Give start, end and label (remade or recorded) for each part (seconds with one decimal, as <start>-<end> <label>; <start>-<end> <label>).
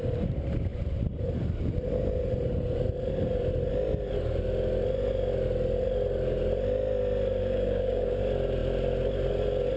0.0-7.4 recorded; 7.4-8.2 remade; 8.2-9.8 recorded